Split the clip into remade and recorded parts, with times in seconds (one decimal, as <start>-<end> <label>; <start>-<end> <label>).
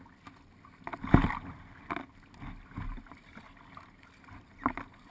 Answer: 0.0-5.1 recorded